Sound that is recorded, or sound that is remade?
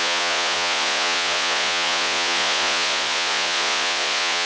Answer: remade